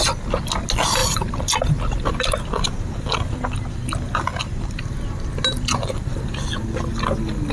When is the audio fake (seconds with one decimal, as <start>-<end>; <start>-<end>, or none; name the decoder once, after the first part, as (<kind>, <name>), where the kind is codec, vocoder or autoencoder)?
none